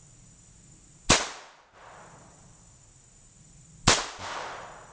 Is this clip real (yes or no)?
yes